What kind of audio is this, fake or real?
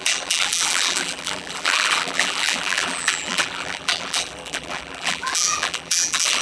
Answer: fake